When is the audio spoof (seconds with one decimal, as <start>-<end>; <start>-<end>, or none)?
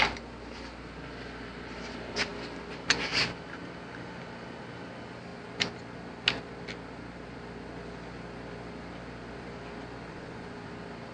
10.1-10.7